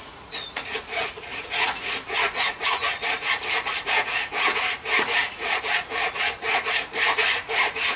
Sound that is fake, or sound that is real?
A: fake